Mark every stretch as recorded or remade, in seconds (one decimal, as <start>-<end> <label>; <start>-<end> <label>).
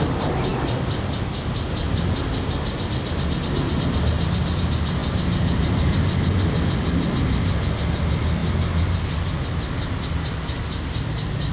0.0-11.5 recorded